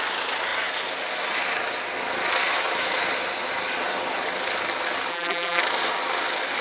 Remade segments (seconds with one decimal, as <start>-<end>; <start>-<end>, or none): 5.1-5.6